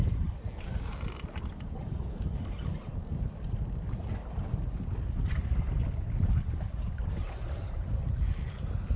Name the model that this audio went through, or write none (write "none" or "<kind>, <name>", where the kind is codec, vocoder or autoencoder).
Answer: none